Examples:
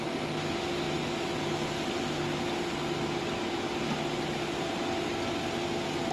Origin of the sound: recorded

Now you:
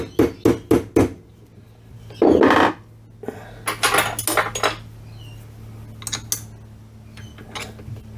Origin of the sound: recorded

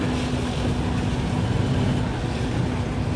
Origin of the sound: recorded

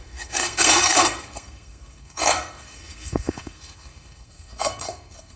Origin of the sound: remade